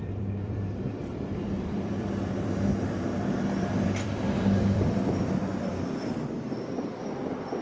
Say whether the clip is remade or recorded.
remade